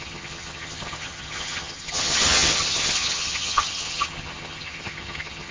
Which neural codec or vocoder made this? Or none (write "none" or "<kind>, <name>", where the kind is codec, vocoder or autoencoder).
vocoder, HiFi-GAN